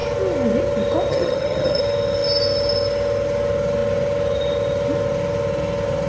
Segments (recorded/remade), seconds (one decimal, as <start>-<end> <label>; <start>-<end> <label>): 0.0-1.1 recorded; 1.1-1.8 remade; 1.8-6.1 recorded